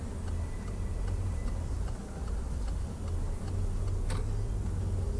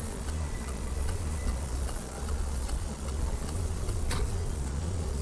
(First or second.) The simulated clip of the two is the second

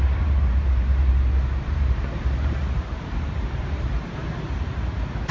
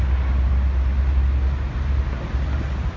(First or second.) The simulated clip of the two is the first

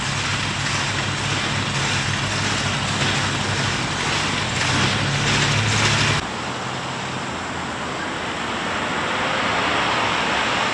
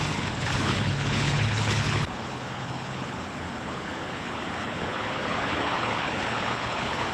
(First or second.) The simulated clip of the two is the second